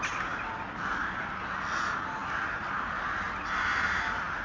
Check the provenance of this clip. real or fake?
real